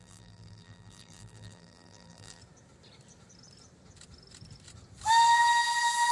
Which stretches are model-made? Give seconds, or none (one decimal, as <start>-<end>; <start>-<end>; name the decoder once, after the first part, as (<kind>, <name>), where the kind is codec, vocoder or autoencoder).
0.0-2.4 (vocoder, BigVGAN v2)